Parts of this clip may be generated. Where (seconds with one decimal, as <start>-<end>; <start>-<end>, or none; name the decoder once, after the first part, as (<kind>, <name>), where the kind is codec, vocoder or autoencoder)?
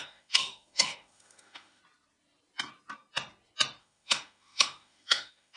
0.0-1.8 (autoencoder, DAC-VAE); 3.8-5.6